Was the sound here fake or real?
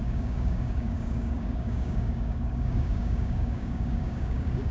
fake